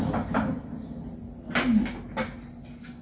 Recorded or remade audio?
recorded